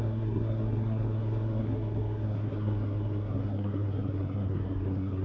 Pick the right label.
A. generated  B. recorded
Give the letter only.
A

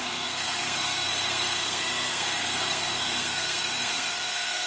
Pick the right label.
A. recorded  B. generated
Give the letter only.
B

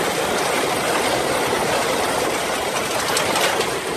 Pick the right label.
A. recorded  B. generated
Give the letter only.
A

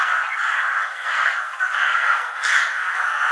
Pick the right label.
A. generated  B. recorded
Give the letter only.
A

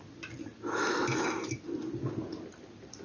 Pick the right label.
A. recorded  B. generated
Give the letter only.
A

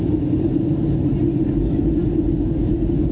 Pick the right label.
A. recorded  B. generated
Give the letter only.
A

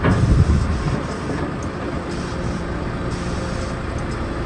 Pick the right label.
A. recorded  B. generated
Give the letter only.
A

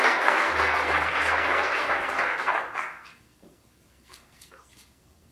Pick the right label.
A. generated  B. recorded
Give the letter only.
A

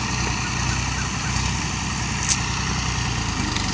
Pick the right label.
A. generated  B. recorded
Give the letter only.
B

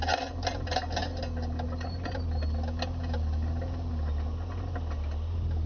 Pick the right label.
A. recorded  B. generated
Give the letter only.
A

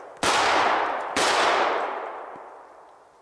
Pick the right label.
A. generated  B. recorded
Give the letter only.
B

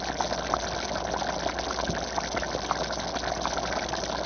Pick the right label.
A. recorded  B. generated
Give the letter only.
A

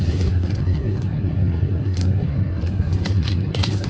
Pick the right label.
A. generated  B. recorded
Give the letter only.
A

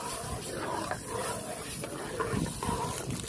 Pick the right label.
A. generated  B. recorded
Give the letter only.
B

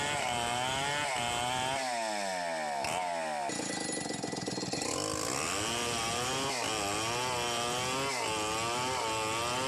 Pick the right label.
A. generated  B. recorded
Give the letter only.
B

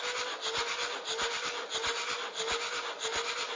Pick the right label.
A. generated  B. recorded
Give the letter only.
B